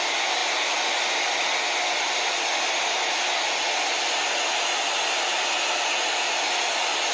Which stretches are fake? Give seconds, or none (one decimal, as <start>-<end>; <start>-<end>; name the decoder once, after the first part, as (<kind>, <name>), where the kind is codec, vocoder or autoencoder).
none